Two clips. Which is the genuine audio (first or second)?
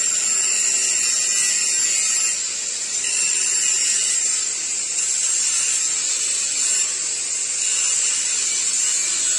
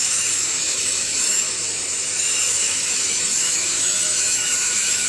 first